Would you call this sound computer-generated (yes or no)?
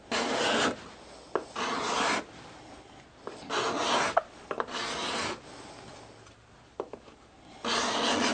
no